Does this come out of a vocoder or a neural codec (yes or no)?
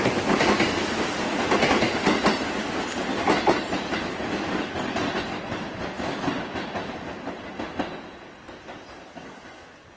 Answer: no